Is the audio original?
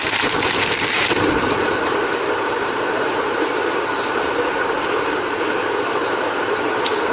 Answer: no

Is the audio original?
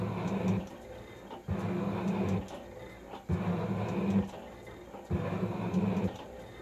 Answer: yes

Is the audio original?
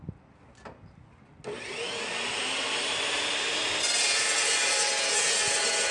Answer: yes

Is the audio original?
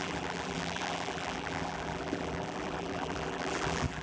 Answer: no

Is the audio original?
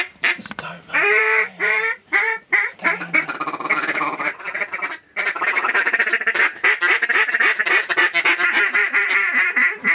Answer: no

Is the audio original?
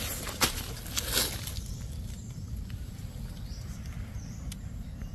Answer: yes